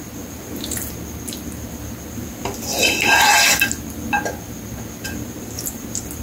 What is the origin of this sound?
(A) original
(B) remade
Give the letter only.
A